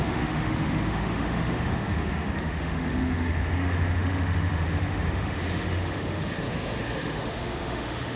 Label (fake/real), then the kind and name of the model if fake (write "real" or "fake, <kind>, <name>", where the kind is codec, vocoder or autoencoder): fake, autoencoder, DAC-VAE